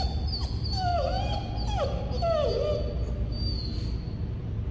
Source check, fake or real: real